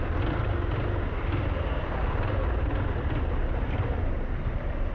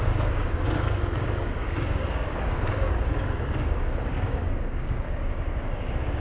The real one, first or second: first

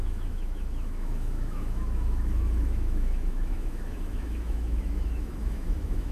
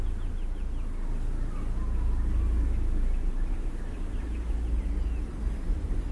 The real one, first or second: second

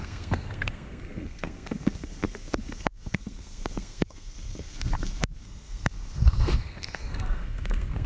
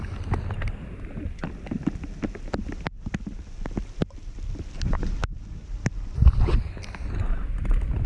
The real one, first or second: second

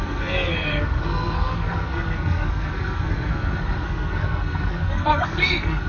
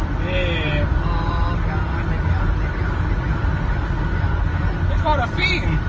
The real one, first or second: second